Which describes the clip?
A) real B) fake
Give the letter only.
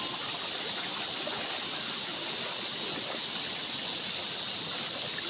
A